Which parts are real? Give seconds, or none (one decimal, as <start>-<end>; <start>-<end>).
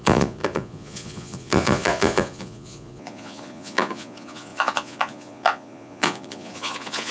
none